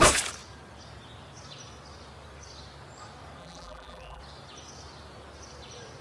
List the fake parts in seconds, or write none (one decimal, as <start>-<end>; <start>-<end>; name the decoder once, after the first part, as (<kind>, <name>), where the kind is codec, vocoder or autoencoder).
3.4-4.2 (vocoder, BigVGAN v2)